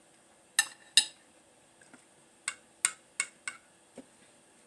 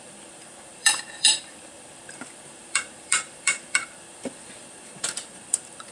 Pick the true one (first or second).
first